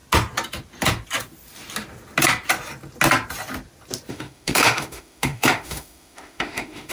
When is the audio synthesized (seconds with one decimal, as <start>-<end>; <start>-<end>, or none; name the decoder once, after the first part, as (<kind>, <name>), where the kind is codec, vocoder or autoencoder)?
4.1-6.9 (autoencoder, DAC-VAE)